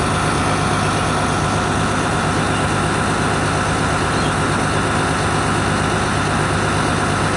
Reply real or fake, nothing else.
real